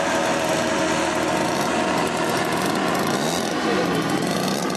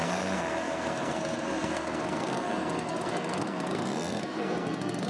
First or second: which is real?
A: first